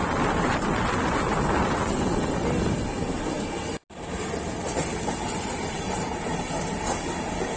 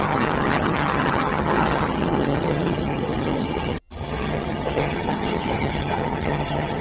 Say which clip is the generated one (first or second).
second